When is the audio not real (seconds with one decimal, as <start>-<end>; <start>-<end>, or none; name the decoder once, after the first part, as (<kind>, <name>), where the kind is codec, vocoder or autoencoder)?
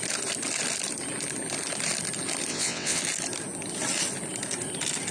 2.5-3.0 (vocoder, WaveNeXt)